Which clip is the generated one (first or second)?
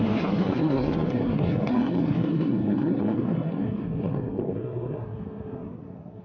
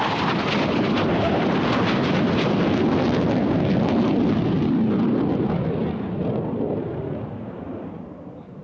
first